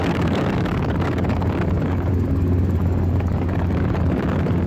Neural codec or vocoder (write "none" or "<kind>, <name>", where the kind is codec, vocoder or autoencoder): codec, DAC